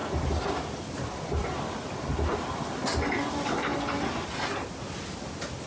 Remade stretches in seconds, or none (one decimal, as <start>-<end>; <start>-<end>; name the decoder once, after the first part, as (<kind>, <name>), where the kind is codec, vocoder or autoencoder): none